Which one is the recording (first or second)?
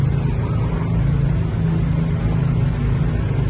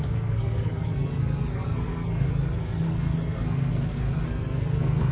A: first